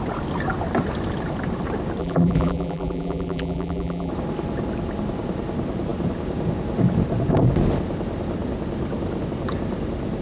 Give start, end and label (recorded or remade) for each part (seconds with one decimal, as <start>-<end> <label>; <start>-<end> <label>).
0.0-2.0 recorded; 2.0-4.1 remade; 4.1-10.2 recorded